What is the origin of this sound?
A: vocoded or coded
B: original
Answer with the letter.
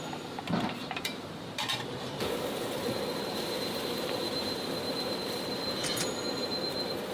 A